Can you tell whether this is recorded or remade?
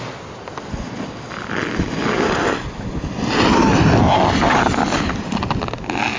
recorded